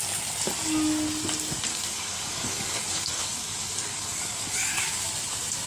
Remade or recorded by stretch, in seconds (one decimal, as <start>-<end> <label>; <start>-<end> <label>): 0.0-1.7 recorded; 1.7-5.1 remade; 5.1-5.7 recorded